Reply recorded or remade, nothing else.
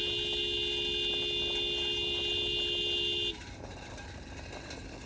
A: recorded